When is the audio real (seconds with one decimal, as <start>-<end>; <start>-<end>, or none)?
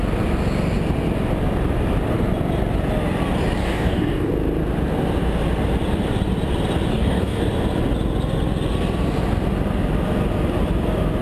0.0-3.6; 4.3-6.9; 7.4-11.2